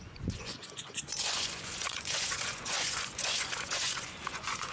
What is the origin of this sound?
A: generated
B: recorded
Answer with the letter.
A